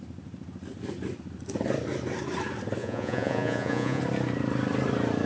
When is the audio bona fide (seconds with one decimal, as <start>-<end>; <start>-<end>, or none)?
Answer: 0.0-2.8; 4.0-5.3